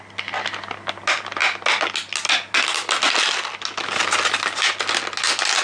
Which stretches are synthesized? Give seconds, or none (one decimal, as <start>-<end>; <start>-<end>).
none